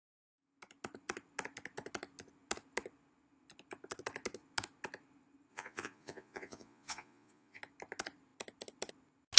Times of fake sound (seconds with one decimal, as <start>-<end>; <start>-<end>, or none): 5.5-7.6